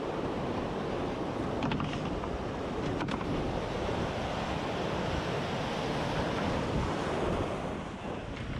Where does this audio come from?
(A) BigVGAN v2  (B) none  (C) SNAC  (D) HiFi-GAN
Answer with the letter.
B